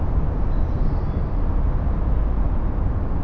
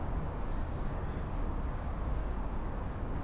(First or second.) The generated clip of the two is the second